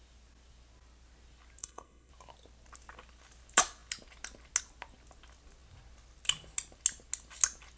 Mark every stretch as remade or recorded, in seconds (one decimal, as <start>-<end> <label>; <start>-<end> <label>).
0.0-1.6 recorded; 1.6-2.1 remade; 2.1-7.8 recorded